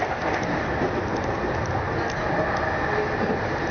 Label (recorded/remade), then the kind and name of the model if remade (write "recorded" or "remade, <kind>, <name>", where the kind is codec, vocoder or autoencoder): recorded